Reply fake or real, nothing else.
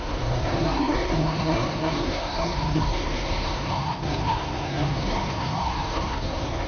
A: fake